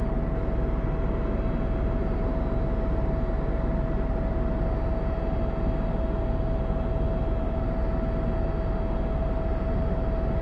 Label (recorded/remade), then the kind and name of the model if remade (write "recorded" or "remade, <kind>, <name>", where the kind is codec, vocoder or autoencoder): recorded